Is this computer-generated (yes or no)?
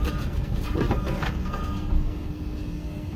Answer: yes